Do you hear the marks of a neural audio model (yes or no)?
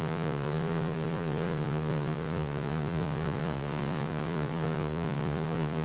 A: yes